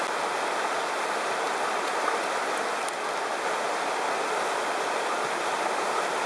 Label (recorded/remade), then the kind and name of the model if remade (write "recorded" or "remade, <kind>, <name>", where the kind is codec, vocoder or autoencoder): recorded